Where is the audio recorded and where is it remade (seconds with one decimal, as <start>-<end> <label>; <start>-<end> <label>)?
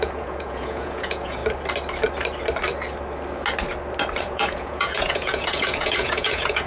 0.0-1.4 remade; 1.4-4.2 recorded; 4.2-6.7 remade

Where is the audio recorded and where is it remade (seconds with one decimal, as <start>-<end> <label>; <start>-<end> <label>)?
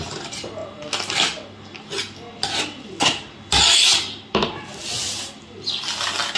0.0-6.4 recorded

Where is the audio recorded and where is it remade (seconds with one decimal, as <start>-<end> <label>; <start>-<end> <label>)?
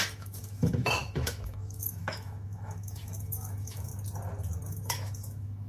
0.0-3.9 remade; 3.9-4.7 recorded; 4.7-5.7 remade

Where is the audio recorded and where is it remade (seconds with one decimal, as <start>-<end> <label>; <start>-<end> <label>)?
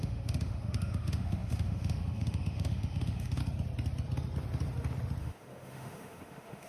0.0-3.4 remade; 3.4-5.2 recorded; 5.2-6.7 remade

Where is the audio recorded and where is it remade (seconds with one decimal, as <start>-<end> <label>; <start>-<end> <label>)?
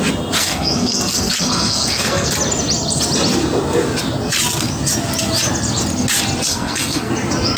0.0-0.4 recorded; 0.4-2.3 remade; 2.3-6.5 recorded; 6.5-7.1 remade; 7.1-7.6 recorded